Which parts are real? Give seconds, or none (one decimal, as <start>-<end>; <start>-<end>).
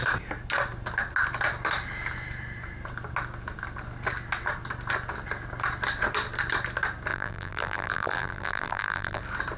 0.0-7.1; 9.2-9.6